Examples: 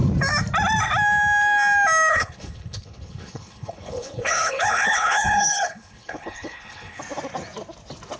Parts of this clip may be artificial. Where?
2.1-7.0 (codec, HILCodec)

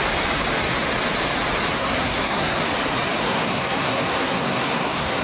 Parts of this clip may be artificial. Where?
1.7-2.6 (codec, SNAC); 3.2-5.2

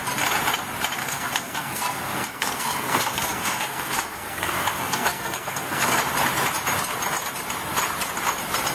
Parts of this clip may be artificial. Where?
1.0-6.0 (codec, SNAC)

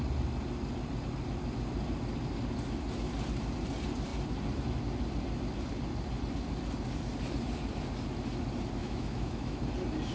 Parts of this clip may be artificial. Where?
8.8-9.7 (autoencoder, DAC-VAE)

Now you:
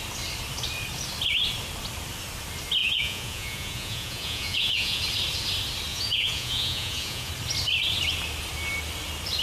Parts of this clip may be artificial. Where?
2.8-5.0 (vocoder, Vocos); 5.9-7.3

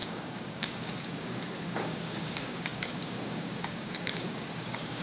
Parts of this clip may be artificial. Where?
0.0-5.0 (codec, DAC)

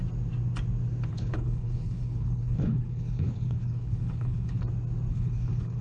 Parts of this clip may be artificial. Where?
1.1-4.6 (codec, HILCodec); 5.1-5.8

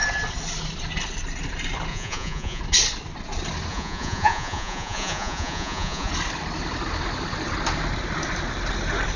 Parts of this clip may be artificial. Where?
1.9-2.6 (vocoder, Vocos); 3.7-6.1